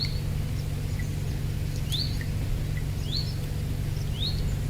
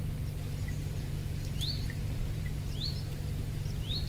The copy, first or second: second